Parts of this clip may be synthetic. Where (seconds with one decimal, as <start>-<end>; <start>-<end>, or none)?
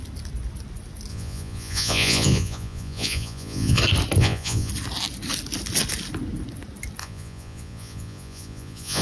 1.1-3.8; 4.2-4.7; 7.0-9.0